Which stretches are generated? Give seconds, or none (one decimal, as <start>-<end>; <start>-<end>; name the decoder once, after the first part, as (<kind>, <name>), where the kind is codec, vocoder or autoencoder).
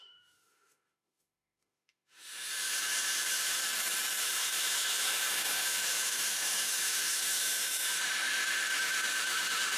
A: 0.0-3.6 (autoencoder, DAC-VAE); 4.2-9.8